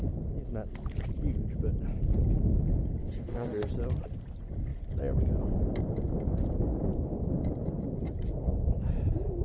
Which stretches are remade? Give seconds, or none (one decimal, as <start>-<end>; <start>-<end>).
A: 3.0-3.7